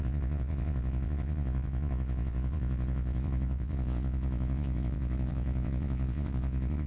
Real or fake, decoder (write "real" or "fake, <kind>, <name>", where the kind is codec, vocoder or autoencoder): fake, vocoder, Vocos